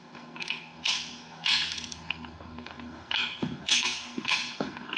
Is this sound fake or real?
fake